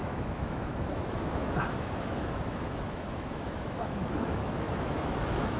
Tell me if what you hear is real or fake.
fake